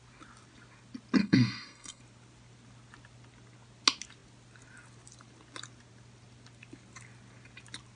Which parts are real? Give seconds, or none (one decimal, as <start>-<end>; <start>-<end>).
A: 0.0-1.2; 2.0-8.0